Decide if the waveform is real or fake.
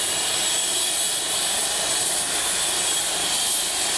real